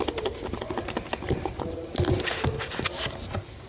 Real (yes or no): yes